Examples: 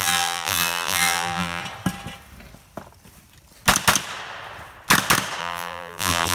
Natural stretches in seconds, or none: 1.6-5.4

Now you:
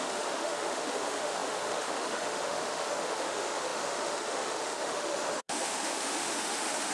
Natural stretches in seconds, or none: none

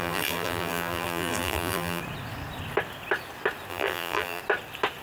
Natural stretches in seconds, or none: 2.0-3.7; 4.4-5.0